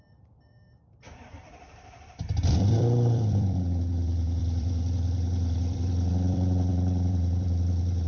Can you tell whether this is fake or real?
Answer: fake